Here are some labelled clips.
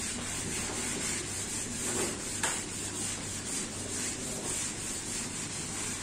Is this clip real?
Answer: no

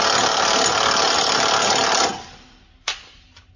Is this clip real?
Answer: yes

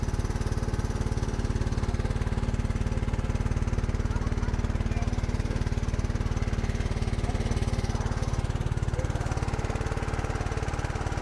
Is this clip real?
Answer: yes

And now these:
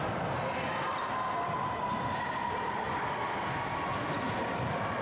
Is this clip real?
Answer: yes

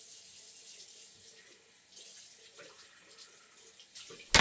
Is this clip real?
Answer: yes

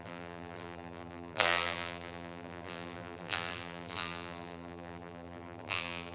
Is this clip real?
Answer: no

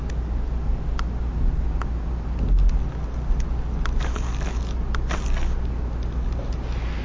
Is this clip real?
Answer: yes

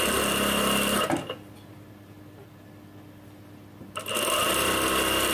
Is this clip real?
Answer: yes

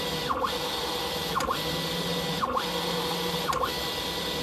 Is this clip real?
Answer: yes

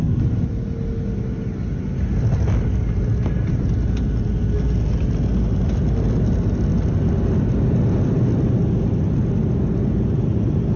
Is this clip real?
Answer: yes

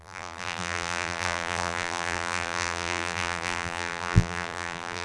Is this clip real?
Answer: no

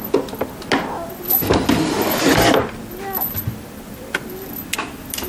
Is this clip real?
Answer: yes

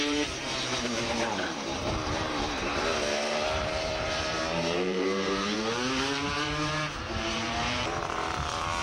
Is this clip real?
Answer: no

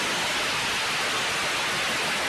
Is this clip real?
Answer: yes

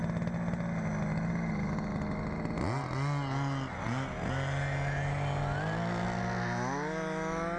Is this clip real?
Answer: yes